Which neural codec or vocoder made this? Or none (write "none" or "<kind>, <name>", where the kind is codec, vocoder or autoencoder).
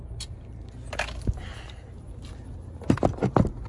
none